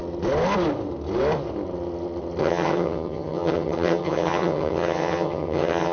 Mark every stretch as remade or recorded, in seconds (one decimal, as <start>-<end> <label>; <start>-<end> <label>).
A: 0.0-2.4 recorded; 2.4-5.9 remade